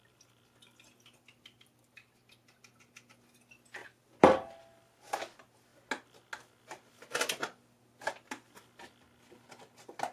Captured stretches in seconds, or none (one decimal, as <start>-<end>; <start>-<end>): 0.0-10.1